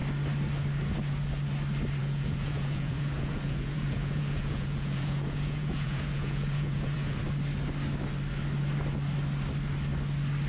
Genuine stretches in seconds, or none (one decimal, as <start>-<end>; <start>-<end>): 0.0-2.0; 7.2-10.5